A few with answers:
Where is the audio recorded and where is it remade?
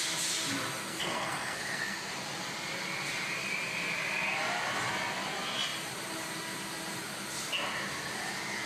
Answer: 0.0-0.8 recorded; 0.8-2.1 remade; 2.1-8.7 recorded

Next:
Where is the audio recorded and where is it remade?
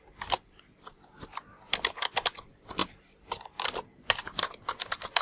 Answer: 0.0-2.8 recorded; 2.8-4.5 remade; 4.5-5.2 recorded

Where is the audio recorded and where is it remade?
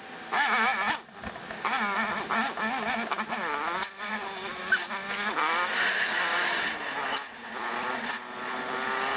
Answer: 0.0-9.2 recorded